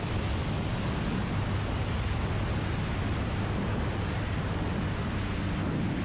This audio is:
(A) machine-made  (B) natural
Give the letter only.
B